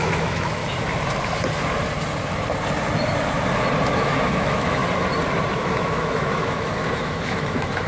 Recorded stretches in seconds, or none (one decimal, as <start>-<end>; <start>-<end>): 0.6-3.9; 4.8-5.5